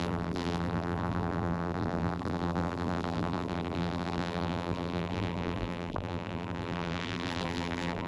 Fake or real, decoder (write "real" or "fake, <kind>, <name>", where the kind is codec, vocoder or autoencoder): fake, vocoder, BigVGAN v2